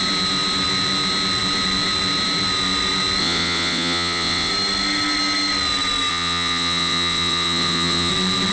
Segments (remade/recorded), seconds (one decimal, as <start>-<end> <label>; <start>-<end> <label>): 0.0-3.2 recorded; 3.2-4.5 remade; 4.5-6.1 recorded; 6.1-8.1 remade; 8.1-8.5 recorded